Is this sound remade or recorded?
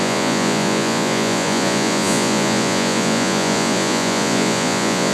remade